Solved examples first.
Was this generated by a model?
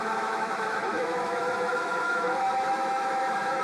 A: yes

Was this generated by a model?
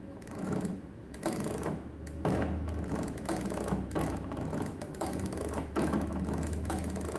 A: yes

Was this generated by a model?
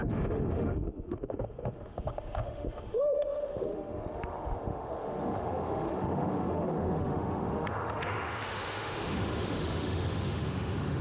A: yes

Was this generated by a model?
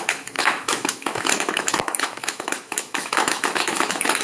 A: yes